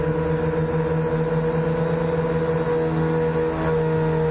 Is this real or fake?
real